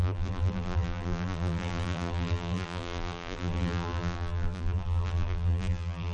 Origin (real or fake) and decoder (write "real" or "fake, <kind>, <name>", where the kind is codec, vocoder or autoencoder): fake, vocoder, BigVGAN v2